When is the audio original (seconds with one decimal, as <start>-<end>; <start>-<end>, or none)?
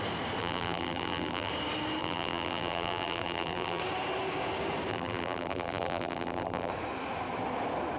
0.0-0.4; 1.5-2.0; 3.8-4.9; 6.7-8.0